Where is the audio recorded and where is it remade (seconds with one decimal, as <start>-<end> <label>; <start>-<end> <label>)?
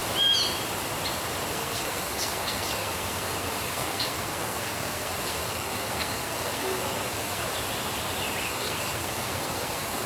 0.0-1.5 recorded; 1.5-7.4 remade; 7.4-8.4 recorded; 8.4-10.1 remade